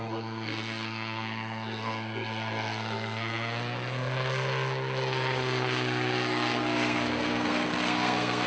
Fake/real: fake